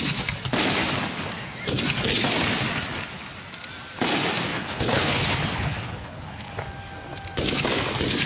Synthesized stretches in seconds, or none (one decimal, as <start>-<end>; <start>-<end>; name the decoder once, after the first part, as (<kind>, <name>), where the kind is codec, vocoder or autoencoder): 4.5-6.5 (codec, HILCodec)